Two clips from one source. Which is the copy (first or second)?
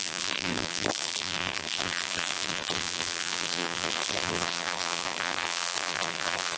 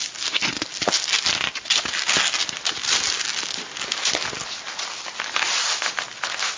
first